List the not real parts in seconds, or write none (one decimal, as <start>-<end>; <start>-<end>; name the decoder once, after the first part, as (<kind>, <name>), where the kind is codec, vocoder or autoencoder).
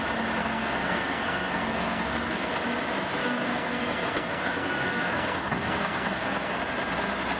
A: 0.4-2.5 (codec, SNAC); 3.2-6.6